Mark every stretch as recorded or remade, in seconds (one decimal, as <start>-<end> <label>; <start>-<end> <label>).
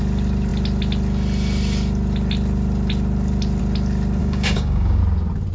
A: 0.0-4.2 recorded; 4.2-5.0 remade; 5.0-5.5 recorded